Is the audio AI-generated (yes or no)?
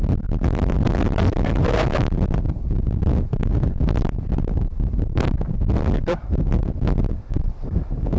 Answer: yes